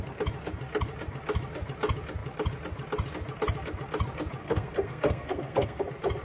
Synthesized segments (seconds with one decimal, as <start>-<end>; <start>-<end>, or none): 4.4-5.8